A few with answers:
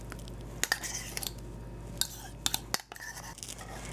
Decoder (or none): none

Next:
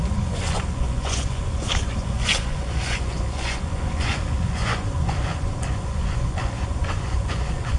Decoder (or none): vocoder, Vocos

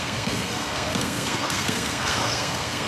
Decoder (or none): codec, SNAC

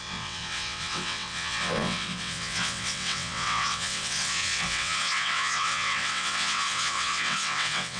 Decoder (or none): vocoder, WaveNeXt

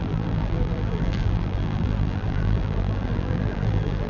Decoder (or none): vocoder, BigVGAN v2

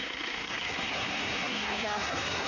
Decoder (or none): codec, SNAC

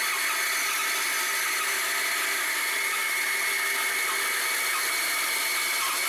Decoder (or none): none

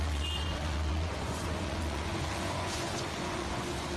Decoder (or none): vocoder, Vocos